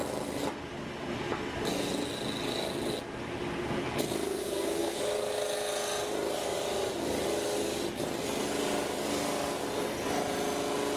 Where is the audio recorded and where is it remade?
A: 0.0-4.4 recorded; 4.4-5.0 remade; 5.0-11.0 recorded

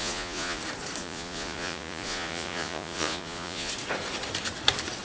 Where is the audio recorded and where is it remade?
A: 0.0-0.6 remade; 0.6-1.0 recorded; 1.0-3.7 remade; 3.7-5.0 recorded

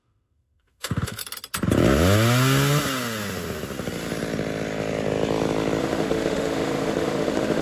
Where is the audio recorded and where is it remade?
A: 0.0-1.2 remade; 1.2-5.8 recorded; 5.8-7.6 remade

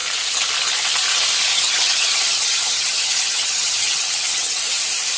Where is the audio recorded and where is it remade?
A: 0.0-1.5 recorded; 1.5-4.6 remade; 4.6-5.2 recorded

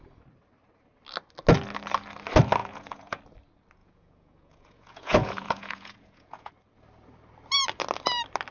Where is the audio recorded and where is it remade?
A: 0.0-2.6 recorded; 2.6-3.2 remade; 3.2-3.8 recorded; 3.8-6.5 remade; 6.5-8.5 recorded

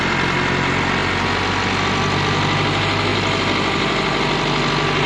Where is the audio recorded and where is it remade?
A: 0.0-5.1 recorded